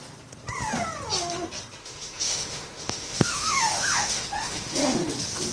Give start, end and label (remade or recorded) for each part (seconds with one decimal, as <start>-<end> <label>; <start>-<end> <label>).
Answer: 0.0-1.8 recorded; 1.8-5.1 remade; 5.1-5.5 recorded